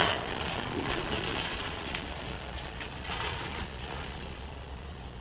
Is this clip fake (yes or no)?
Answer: yes